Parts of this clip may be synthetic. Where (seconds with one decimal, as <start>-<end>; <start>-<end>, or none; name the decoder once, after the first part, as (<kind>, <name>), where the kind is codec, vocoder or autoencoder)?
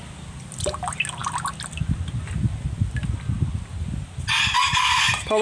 none